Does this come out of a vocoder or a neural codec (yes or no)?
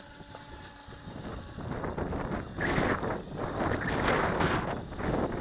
no